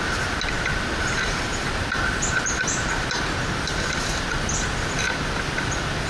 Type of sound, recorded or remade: recorded